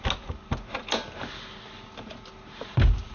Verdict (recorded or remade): recorded